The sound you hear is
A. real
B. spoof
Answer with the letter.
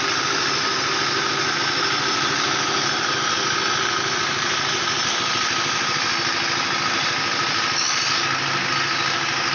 A